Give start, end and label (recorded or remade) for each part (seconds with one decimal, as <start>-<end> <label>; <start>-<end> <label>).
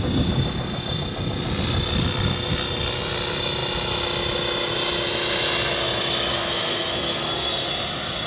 0.0-6.3 recorded; 6.3-7.7 remade; 7.7-8.3 recorded